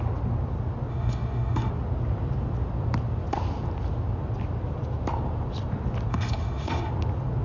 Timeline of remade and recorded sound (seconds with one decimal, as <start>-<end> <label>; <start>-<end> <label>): 0.0-0.9 recorded; 0.9-1.7 remade; 1.7-6.1 recorded; 6.1-6.9 remade; 6.9-7.4 recorded